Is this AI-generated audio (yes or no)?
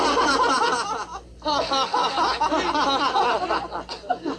no